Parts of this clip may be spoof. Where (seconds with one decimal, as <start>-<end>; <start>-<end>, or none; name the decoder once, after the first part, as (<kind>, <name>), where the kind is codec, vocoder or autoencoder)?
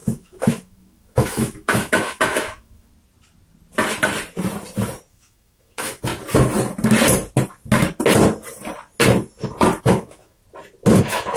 0.0-2.9 (autoencoder, DAC-VAE); 5.1-6.1; 9.8-10.4; 11.0-11.4